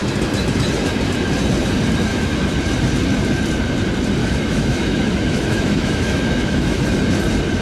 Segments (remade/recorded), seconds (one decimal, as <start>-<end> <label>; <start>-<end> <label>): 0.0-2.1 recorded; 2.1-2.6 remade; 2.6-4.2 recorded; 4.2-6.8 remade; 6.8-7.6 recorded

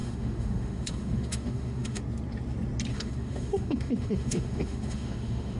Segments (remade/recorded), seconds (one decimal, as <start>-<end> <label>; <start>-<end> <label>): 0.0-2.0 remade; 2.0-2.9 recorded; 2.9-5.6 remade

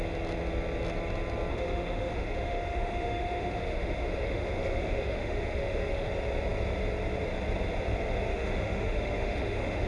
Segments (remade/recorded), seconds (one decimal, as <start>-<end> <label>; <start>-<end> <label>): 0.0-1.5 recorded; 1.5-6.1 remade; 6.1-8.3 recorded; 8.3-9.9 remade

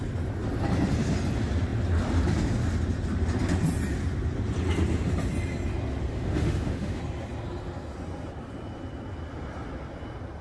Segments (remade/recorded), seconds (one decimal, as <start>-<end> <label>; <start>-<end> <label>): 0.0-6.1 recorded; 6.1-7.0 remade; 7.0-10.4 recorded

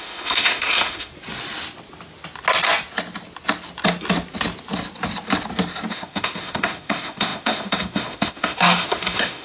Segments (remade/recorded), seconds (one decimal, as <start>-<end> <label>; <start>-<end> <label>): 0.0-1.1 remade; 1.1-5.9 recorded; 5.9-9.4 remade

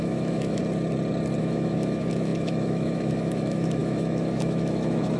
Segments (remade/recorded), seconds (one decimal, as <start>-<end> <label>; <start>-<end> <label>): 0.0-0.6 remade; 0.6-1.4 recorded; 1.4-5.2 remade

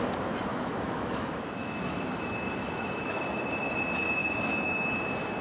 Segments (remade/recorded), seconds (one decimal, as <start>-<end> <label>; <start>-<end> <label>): 0.0-0.5 recorded; 0.5-3.7 remade; 3.7-4.2 recorded; 4.2-4.9 remade; 4.9-5.4 recorded

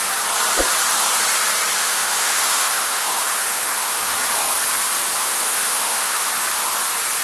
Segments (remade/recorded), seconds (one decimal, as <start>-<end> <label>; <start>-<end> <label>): 0.0-1.8 recorded; 1.8-4.1 remade; 4.1-5.2 recorded; 5.2-6.3 remade; 6.3-7.2 recorded